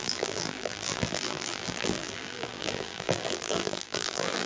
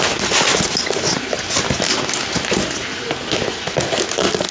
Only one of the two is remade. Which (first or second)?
first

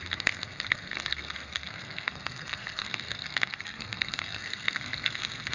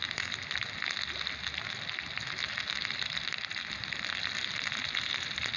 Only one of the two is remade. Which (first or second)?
first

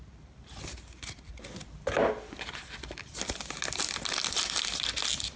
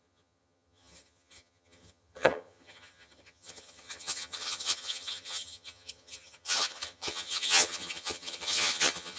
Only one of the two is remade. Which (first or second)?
second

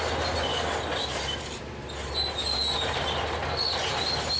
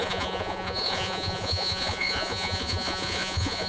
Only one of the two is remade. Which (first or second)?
second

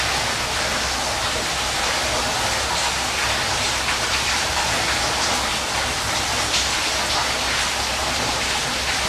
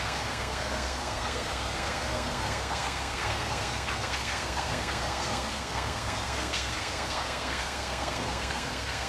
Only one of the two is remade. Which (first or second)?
second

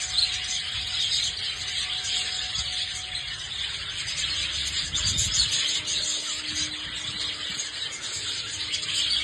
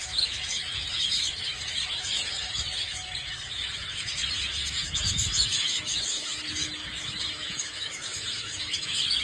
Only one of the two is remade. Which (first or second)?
second